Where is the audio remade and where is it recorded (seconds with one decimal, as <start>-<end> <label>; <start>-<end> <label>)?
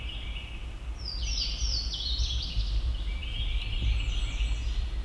0.0-5.0 recorded